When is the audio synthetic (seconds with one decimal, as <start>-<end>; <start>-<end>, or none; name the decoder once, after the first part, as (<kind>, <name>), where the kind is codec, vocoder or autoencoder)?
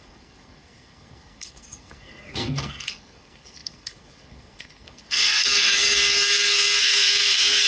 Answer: 0.0-7.7 (codec, SNAC)